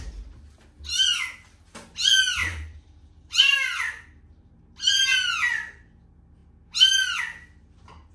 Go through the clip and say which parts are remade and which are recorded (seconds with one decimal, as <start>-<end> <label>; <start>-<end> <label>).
0.0-2.4 recorded; 2.4-4.6 remade; 4.6-8.1 recorded